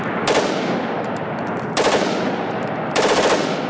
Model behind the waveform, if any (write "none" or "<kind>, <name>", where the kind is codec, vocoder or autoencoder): none